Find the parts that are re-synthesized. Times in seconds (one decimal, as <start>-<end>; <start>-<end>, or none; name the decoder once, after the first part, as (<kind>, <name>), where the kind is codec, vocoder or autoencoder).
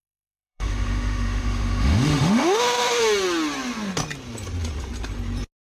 0.0-3.0 (autoencoder, DAC-VAE)